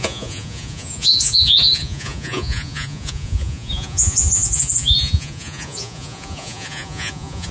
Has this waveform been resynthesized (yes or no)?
yes